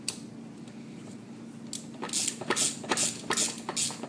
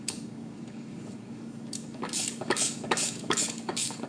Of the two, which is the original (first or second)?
first